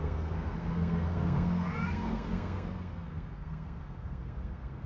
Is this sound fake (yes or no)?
yes